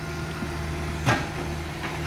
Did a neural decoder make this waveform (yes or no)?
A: no